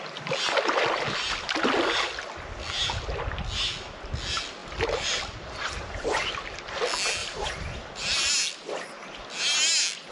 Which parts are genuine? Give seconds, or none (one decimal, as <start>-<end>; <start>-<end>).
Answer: 0.0-4.6; 6.3-7.2; 8.3-10.1

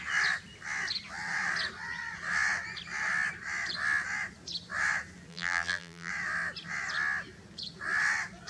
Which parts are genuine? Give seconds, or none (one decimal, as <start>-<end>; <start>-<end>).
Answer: 0.0-5.3; 6.1-8.5

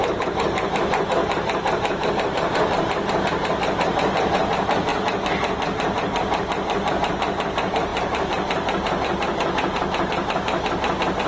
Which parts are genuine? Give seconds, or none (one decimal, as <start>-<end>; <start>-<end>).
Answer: 4.9-6.9

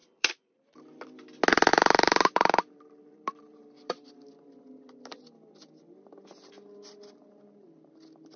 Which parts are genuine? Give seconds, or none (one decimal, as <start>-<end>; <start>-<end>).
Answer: 0.7-1.7; 4.1-8.4

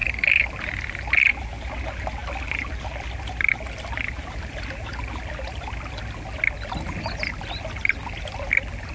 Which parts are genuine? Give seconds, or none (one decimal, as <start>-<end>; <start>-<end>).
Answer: 0.0-8.9

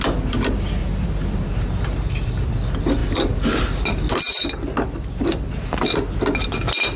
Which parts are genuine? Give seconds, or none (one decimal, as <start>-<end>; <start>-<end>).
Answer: 0.0-0.8; 2.5-3.0; 3.6-7.0